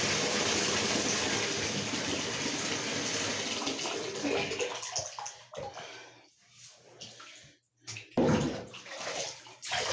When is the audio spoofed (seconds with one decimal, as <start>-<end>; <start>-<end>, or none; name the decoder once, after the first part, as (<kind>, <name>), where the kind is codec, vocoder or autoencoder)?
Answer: 7.7-9.9 (vocoder, BigVGAN v2)